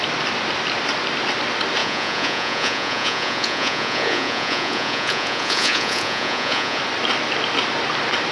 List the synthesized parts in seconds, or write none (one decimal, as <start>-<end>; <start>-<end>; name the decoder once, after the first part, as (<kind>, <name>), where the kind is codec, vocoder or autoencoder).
1.8-6.8 (vocoder, Vocos)